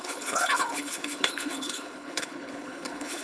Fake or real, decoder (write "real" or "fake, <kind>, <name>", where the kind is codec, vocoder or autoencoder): fake, codec, HILCodec